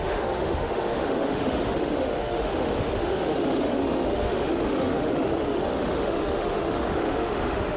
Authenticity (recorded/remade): remade